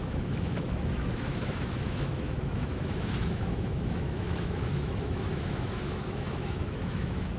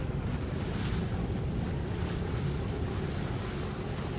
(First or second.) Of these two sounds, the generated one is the first